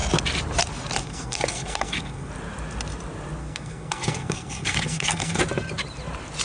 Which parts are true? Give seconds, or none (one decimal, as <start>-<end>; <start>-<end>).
0.0-1.0; 2.3-3.4; 5.4-6.4